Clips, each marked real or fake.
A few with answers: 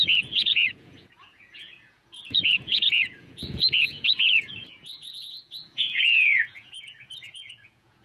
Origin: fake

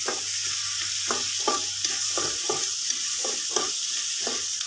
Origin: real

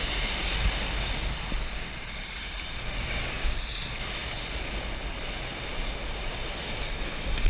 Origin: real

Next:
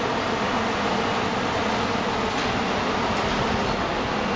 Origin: real